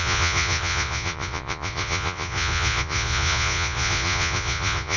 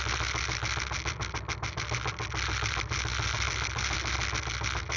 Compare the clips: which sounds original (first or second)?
second